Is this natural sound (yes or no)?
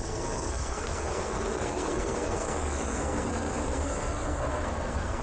no